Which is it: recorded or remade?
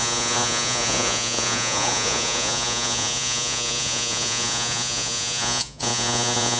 remade